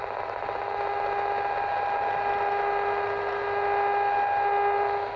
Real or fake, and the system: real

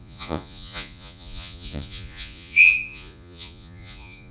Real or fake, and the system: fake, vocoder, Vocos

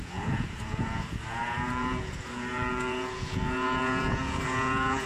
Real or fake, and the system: fake, vocoder, Vocos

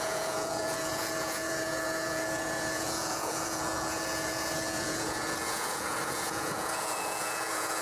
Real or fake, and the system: fake, vocoder, Vocos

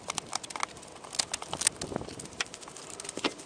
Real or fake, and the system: real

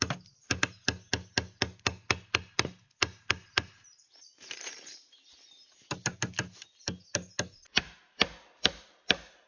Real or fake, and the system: real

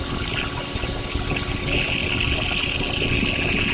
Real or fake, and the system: real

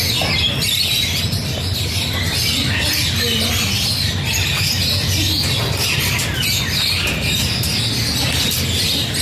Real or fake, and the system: real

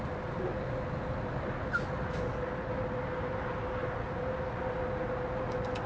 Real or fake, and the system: real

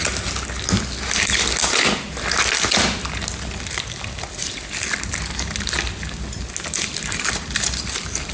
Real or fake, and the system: real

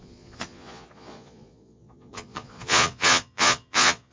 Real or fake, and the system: fake, vocoder, Vocos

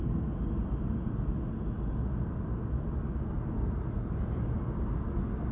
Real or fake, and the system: real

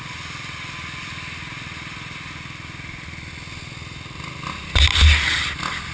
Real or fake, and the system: real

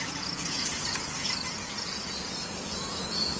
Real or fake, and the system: fake, vocoder, Vocos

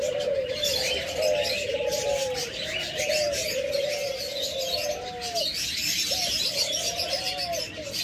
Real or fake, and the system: real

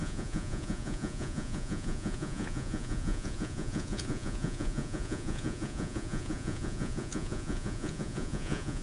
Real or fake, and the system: fake, vocoder, Vocos